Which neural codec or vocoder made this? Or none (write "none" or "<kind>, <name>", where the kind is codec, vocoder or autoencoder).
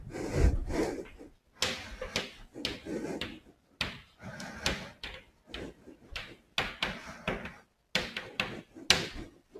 none